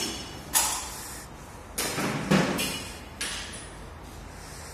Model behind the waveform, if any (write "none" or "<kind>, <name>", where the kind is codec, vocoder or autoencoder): none